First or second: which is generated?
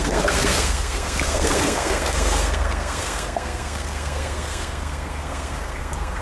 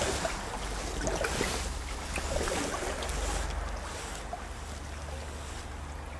first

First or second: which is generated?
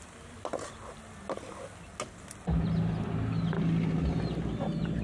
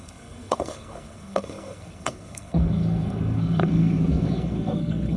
second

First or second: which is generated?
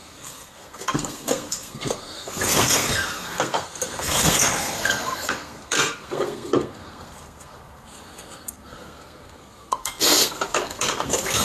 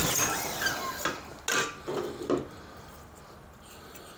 first